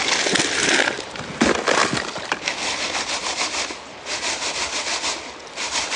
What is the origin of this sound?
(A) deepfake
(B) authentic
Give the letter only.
B